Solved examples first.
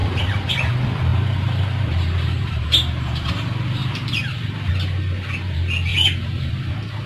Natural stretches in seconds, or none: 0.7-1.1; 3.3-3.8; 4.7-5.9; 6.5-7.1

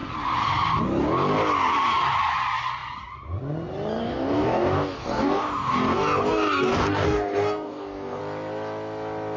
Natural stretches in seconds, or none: 0.0-4.0; 8.2-9.4

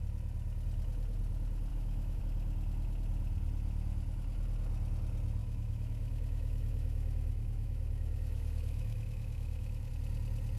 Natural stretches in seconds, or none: 0.0-1.7; 2.2-5.4; 9.9-10.6

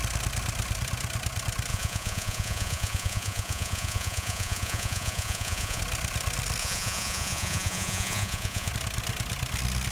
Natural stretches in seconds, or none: 0.0-1.7; 5.8-6.6; 8.7-9.9